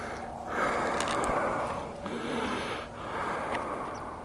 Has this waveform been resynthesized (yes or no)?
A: no